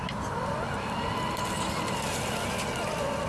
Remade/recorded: recorded